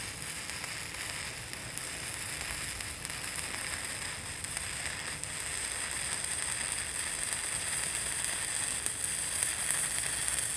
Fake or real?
real